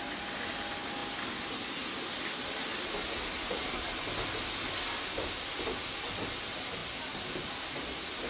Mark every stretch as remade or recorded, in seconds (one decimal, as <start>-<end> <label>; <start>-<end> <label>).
0.0-8.3 recorded